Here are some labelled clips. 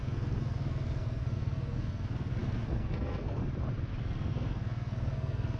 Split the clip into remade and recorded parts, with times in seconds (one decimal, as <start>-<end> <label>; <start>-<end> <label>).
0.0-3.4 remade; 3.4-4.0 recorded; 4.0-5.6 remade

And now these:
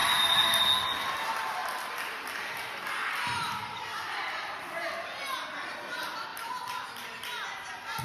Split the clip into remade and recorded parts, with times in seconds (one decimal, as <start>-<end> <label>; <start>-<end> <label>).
0.0-0.6 remade; 0.6-1.6 recorded; 1.6-5.4 remade; 5.4-8.0 recorded

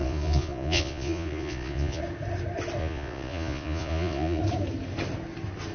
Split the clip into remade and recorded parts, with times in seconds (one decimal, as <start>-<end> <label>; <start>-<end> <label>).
0.0-2.0 remade; 2.0-2.8 recorded; 2.8-4.4 remade; 4.4-5.7 recorded

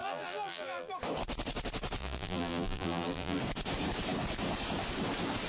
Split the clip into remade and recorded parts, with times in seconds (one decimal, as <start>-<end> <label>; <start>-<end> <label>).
0.0-0.9 remade; 0.9-2.0 recorded; 2.0-3.4 remade; 3.4-5.5 recorded

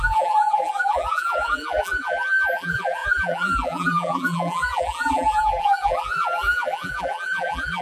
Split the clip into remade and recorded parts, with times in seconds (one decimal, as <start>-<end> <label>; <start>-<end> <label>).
0.0-7.8 remade